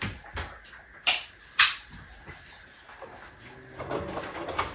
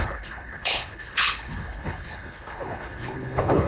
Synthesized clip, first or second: second